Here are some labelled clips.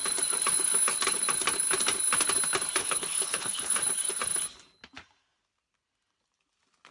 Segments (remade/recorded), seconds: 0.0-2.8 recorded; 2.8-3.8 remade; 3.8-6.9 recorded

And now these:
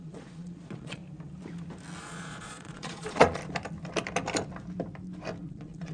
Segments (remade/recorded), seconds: 0.0-1.0 remade; 1.0-2.0 recorded; 2.0-3.4 remade; 3.4-5.5 recorded; 5.5-5.9 remade

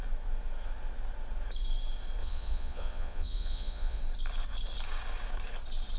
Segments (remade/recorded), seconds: 0.0-2.2 recorded; 2.2-4.0 remade; 4.0-6.0 recorded

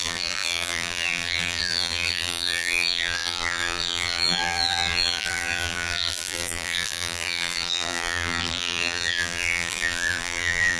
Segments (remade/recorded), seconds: 0.0-10.8 remade

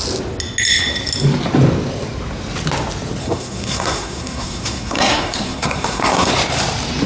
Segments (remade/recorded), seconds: 0.0-3.2 recorded; 3.2-6.3 remade; 6.3-7.1 recorded